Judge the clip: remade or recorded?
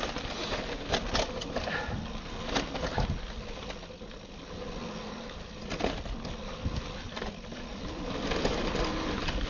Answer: recorded